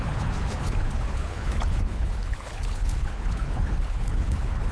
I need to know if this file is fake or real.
fake